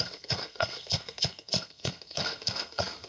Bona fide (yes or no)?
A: no